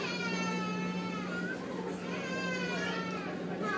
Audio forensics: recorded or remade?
recorded